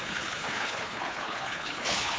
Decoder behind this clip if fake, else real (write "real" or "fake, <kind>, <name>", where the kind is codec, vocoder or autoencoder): fake, codec, HILCodec